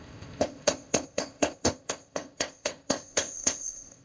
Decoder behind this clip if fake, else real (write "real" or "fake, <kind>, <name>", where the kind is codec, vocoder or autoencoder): fake, codec, ZipCodec